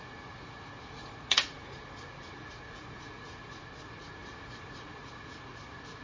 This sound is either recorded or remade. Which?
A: remade